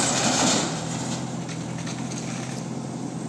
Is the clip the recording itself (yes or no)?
yes